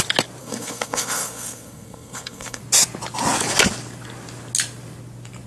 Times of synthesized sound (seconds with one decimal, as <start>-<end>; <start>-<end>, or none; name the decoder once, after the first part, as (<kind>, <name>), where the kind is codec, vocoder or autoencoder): 0.4-2.6 (codec, SNAC)